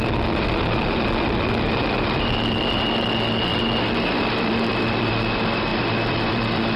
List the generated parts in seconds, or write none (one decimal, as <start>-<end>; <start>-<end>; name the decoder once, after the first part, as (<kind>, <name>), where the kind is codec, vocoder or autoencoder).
3.5-5.1 (vocoder, BigVGAN v2); 5.7-6.8

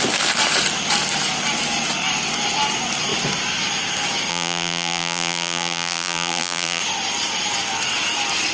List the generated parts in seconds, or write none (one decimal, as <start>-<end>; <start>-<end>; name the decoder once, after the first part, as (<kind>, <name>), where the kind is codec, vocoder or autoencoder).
4.3-6.8 (vocoder, BigVGAN v2)

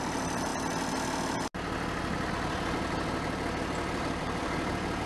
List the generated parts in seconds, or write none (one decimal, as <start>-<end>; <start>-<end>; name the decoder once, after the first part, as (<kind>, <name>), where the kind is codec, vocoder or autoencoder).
0.0-0.5 (vocoder, BigVGAN v2); 2.3-5.1

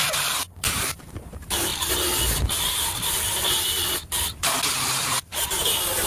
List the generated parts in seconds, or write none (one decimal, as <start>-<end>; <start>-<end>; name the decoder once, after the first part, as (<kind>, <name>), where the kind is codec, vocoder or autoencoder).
0.0-1.7 (vocoder, BigVGAN v2); 4.7-6.1

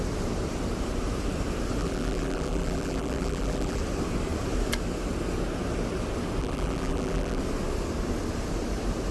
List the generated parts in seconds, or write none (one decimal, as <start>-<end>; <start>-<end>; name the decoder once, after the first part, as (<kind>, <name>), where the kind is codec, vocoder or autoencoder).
1.8-3.8 (vocoder, BigVGAN v2); 6.4-7.4

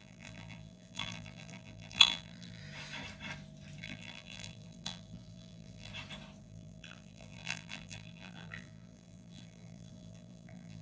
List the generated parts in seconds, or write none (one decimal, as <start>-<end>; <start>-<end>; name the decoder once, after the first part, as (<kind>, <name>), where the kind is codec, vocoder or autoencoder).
0.0-2.6 (vocoder, BigVGAN v2); 3.8-5.9; 6.4-10.8